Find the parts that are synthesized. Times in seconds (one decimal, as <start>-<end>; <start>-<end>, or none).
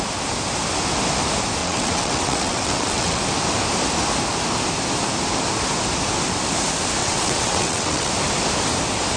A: 1.6-3.2; 7.0-8.1